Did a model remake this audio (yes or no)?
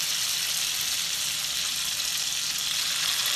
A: no